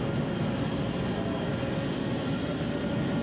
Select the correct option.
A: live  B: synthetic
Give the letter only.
A